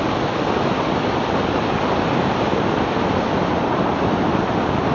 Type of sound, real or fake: real